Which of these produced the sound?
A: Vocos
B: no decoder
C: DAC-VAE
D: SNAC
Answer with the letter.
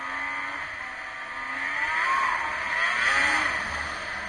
B